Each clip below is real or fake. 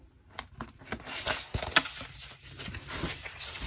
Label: real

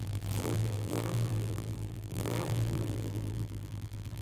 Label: fake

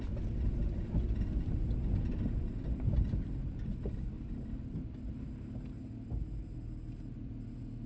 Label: real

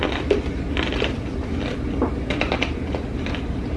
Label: real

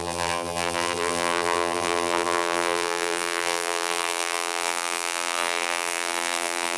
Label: fake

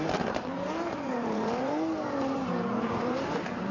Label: fake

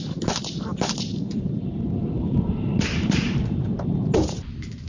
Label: fake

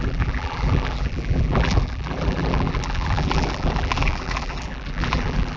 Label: fake